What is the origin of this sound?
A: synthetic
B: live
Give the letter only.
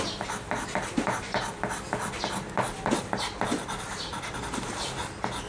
B